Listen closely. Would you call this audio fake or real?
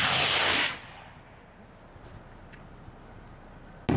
real